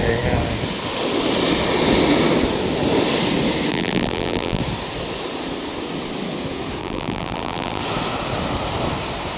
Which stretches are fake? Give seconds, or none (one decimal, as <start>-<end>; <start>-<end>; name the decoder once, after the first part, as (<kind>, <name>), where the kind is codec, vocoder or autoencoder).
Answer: 3.7-4.6 (vocoder, BigVGAN v2); 6.8-7.8